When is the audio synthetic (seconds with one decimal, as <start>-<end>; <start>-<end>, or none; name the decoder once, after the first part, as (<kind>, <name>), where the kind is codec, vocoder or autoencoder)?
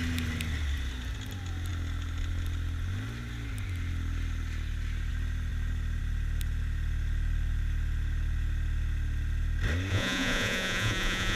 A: 9.9-11.4 (vocoder, Vocos)